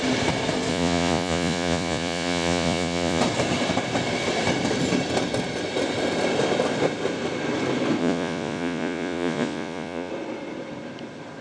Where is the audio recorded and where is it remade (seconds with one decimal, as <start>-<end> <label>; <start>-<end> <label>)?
0.0-0.7 recorded; 0.7-3.2 remade; 3.2-8.0 recorded; 8.0-10.1 remade; 10.1-11.4 recorded